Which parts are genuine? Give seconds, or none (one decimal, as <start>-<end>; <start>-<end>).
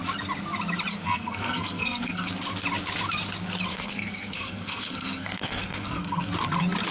0.0-0.9; 2.3-3.7; 6.3-6.9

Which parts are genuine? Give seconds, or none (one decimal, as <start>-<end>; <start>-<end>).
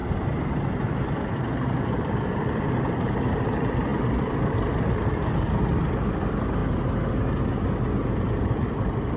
0.0-1.5; 6.6-8.2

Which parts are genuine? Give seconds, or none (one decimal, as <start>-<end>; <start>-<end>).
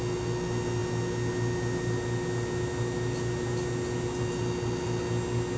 0.0-5.6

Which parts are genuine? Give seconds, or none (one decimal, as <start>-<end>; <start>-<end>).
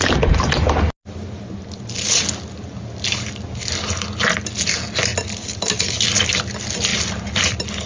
0.0-6.9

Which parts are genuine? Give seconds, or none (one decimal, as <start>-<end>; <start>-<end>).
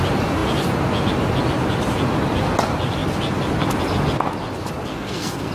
0.0-4.9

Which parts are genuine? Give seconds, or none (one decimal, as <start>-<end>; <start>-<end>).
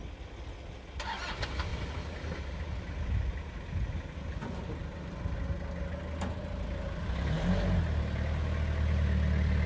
0.0-9.7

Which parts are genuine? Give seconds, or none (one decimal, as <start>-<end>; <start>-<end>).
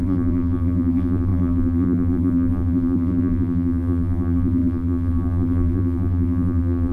none